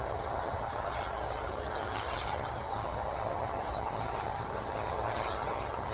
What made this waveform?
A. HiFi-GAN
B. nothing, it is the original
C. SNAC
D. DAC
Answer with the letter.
A